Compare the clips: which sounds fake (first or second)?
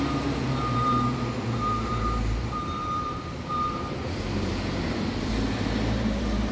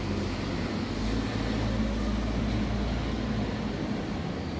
first